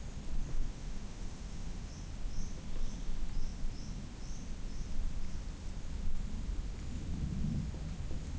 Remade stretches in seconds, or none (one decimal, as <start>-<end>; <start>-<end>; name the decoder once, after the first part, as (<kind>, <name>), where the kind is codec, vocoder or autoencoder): 0.5-1.9 (autoencoder, DAC-VAE)